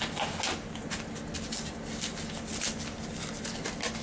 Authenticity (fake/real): real